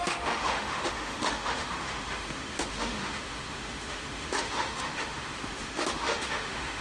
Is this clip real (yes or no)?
no